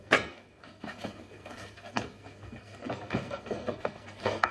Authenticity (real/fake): fake